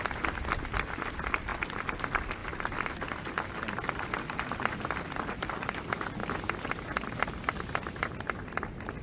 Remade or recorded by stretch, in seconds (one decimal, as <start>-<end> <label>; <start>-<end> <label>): 0.0-9.0 recorded